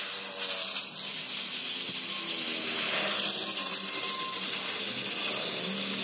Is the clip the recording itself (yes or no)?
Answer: yes